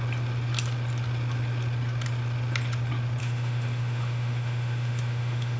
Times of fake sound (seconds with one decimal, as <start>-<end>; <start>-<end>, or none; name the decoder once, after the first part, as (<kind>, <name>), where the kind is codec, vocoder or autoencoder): 3.2-5.6 (autoencoder, DAC-VAE)